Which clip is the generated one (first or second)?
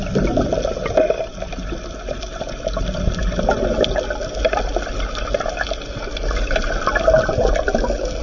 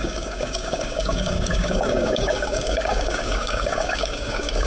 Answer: second